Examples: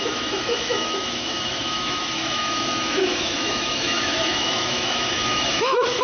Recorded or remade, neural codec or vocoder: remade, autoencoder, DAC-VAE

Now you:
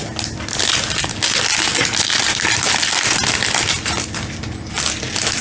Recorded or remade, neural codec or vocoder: recorded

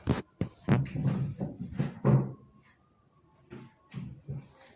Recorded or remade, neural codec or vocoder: recorded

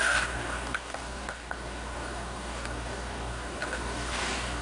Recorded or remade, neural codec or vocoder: remade, codec, DAC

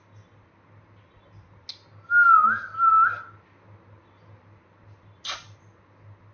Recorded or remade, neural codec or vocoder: recorded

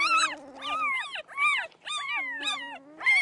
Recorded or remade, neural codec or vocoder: recorded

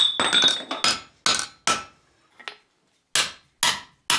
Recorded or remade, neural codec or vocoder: recorded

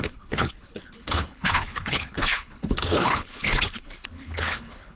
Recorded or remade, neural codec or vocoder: remade, codec, HILCodec